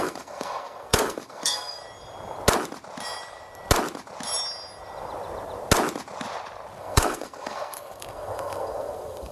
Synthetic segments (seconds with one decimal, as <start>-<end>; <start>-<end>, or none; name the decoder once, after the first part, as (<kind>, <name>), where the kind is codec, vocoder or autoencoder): 0.0-1.8 (codec, SNAC); 6.8-9.3